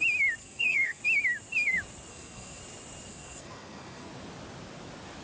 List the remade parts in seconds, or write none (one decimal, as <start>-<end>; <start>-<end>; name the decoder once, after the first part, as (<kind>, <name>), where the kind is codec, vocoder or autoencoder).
0.4-1.0 (codec, SNAC); 2.1-2.6; 3.1-4.1